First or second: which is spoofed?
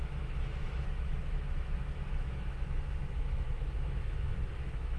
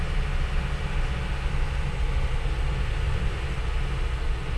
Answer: first